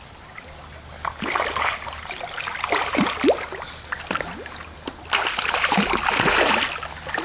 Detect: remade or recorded recorded